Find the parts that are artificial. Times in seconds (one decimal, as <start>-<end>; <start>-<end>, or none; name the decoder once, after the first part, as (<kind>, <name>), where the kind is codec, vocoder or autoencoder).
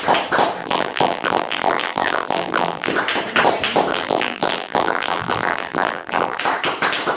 0.6-2.9 (vocoder, BigVGAN v2); 3.9-6.4